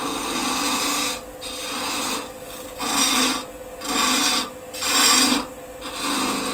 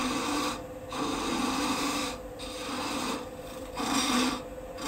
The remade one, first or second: second